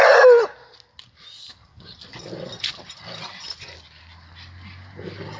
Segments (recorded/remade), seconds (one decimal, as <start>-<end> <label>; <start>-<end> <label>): 0.0-5.4 recorded